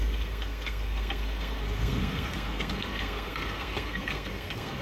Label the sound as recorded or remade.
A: remade